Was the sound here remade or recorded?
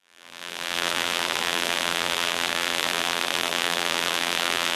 remade